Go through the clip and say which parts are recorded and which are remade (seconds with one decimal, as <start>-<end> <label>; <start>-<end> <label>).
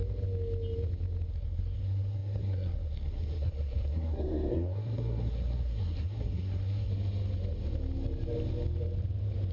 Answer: 0.0-1.3 recorded; 1.3-6.9 remade; 6.9-9.5 recorded